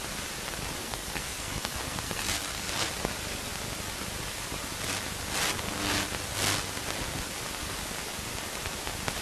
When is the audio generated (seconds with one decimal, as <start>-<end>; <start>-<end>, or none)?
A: 0.8-2.9